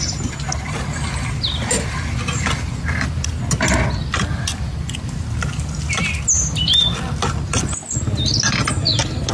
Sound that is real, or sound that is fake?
real